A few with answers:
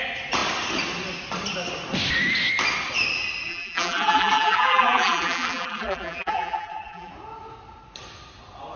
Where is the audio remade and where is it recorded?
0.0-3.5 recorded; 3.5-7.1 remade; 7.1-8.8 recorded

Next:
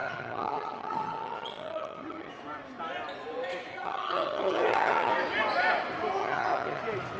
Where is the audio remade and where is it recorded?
0.0-2.3 remade; 2.3-3.7 recorded; 3.7-5.1 remade; 5.1-6.2 recorded; 6.2-6.8 remade; 6.8-7.2 recorded

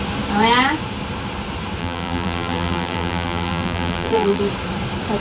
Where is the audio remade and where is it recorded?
0.0-1.8 recorded; 1.8-4.4 remade; 4.4-5.2 recorded

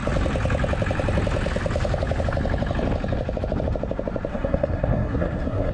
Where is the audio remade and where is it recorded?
0.0-4.3 recorded; 4.3-5.7 remade